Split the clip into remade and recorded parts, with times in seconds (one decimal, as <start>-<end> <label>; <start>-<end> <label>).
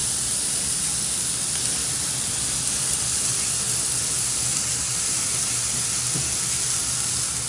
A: 0.0-1.3 remade; 1.3-1.8 recorded; 1.8-3.6 remade; 3.6-4.5 recorded; 4.5-5.6 remade; 5.6-7.5 recorded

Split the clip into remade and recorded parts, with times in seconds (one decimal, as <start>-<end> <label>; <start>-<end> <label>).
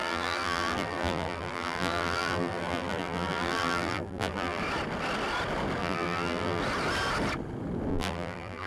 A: 0.0-4.6 remade; 4.6-5.8 recorded; 5.8-6.6 remade; 6.6-7.9 recorded; 7.9-8.7 remade